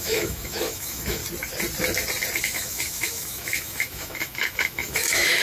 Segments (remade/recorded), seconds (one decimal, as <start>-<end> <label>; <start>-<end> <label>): 0.0-1.2 remade; 1.2-2.4 recorded; 2.4-5.4 remade